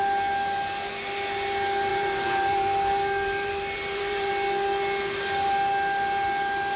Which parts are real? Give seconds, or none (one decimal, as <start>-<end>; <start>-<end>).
0.0-1.9; 4.3-6.8